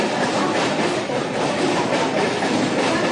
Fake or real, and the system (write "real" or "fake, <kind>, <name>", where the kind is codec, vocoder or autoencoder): real